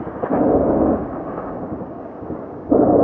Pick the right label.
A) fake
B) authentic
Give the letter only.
A